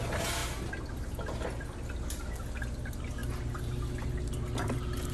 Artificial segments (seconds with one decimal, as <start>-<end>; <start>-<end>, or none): none